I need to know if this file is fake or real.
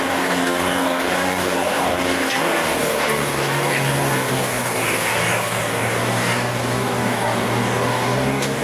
fake